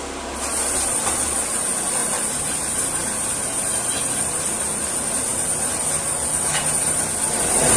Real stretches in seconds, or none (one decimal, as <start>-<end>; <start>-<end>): 0.0-7.8

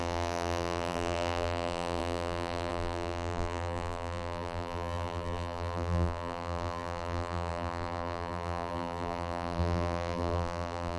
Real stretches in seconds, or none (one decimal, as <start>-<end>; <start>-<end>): none

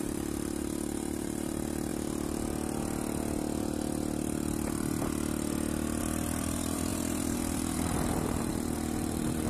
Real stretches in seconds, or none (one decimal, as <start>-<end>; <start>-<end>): 1.9-6.0

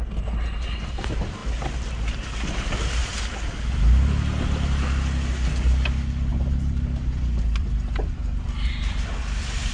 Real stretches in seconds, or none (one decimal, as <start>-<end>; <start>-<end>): 0.0-3.0; 3.5-6.3

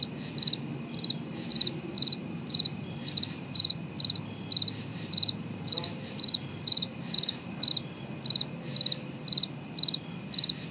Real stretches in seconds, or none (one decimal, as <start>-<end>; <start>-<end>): 0.0-1.5; 3.9-4.9; 7.7-10.7

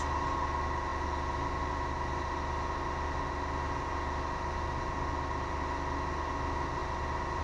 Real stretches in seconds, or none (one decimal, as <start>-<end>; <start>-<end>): 0.0-7.4

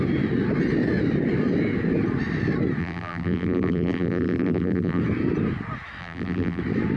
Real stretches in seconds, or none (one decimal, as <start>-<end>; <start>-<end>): 0.0-2.8; 5.0-6.0; 6.6-7.0